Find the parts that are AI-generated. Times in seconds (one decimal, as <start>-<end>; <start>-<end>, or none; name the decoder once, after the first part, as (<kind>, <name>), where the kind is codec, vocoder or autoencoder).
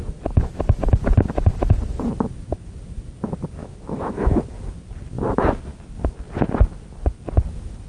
3.6-4.4 (autoencoder, DAC-VAE)